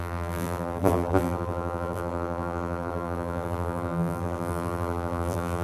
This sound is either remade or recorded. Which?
remade